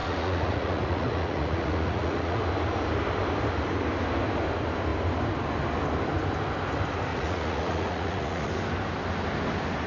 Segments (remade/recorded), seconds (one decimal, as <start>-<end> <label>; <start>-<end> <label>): 0.0-2.4 remade; 2.4-7.1 recorded; 7.1-8.5 remade; 8.5-9.9 recorded